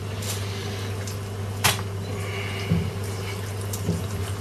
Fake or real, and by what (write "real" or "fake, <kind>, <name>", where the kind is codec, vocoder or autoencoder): real